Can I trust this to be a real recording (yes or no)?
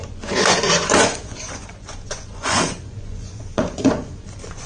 no